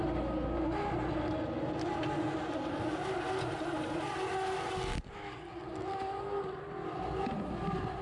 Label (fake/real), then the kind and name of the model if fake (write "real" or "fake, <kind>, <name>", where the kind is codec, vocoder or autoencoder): real